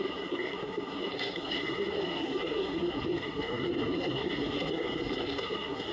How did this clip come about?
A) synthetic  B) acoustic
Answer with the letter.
A